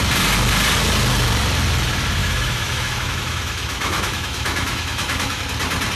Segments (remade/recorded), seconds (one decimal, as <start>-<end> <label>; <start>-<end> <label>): 0.0-2.2 recorded; 2.2-5.4 remade; 5.4-6.0 recorded